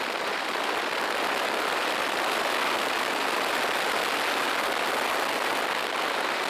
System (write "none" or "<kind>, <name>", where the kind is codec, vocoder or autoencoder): none